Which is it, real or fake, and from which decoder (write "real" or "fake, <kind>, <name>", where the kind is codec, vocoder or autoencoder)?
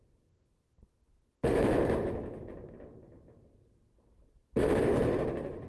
real